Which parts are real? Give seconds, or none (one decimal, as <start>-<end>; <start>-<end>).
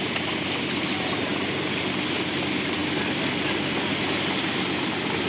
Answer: 0.0-5.3